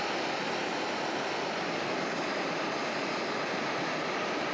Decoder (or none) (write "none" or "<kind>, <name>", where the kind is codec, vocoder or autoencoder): none